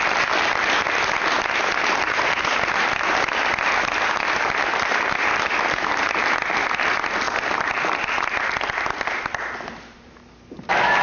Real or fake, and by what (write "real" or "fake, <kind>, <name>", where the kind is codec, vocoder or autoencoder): real